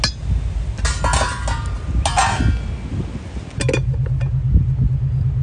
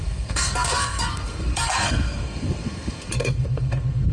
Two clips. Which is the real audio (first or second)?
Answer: first